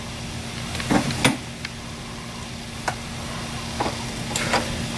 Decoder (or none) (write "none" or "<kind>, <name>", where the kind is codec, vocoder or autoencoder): none